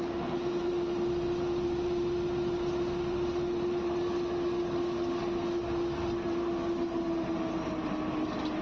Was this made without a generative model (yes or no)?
yes